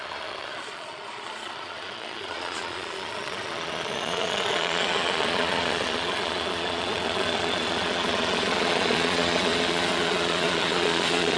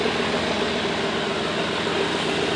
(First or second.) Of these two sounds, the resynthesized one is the first